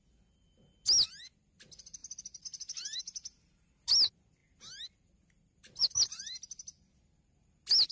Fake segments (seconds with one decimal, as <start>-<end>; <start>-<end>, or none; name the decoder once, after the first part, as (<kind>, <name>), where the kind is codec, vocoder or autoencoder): none